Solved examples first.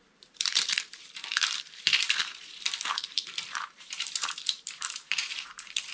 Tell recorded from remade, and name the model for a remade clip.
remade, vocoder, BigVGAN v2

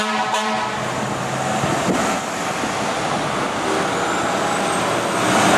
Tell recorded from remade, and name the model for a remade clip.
recorded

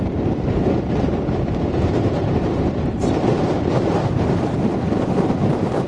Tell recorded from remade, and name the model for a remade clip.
remade, vocoder, BigVGAN v2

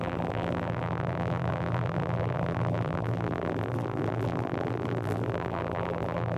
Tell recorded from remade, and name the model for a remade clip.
remade, vocoder, BigVGAN v2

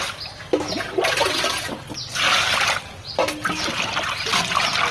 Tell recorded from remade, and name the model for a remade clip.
recorded